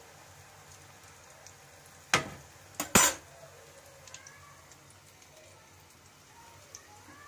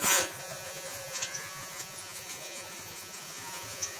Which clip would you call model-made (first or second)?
second